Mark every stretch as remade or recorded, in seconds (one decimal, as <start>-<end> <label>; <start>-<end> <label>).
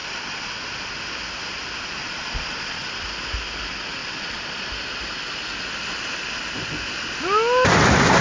0.0-0.5 remade; 0.5-2.0 recorded; 2.0-2.9 remade; 2.9-4.0 recorded; 4.0-4.7 remade; 4.7-8.2 recorded